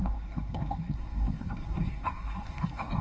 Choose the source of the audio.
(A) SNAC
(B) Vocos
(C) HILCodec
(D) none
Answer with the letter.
A